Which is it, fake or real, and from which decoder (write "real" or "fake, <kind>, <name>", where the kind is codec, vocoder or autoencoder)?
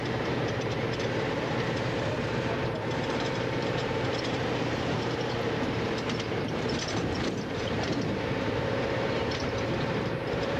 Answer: fake, vocoder, BigVGAN v2